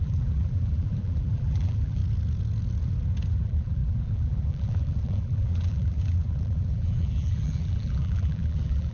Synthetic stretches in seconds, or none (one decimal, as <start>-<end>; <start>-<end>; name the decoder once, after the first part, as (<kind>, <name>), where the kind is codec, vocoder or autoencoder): 0.0-2.0 (vocoder, BigVGAN v2); 3.3-8.9